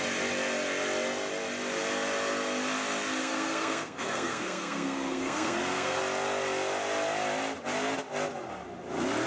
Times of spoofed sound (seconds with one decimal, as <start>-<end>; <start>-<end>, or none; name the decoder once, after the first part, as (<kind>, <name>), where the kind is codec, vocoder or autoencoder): 3.2-6.0 (codec, SNAC)